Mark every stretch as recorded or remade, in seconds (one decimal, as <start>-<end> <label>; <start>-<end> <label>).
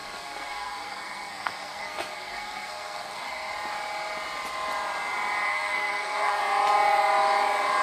0.0-3.5 remade; 3.5-5.5 recorded; 5.5-6.4 remade; 6.4-7.8 recorded